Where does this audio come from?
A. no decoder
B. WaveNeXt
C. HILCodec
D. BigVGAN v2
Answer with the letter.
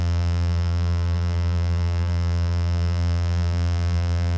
D